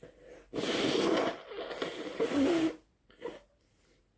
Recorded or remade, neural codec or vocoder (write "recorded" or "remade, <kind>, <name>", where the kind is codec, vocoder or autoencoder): recorded